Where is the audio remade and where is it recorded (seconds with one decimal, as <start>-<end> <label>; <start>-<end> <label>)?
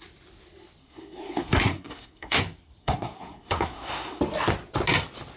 0.0-0.8 recorded; 0.8-2.4 remade; 2.4-2.8 recorded; 2.8-4.2 remade; 4.2-5.4 recorded